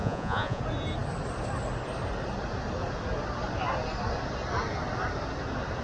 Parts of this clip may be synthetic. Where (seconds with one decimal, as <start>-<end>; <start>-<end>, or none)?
0.0-0.6